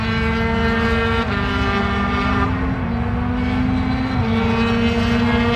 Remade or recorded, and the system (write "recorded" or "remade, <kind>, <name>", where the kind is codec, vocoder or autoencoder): recorded